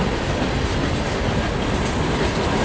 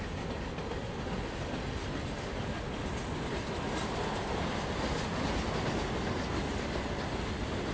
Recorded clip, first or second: second